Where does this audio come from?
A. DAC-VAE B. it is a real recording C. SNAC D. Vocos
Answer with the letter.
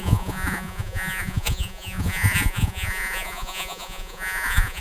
D